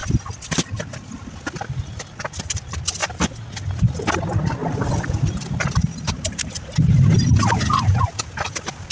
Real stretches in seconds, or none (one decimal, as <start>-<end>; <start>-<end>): 0.0-8.9